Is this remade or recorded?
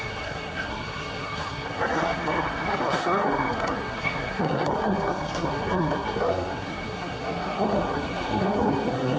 remade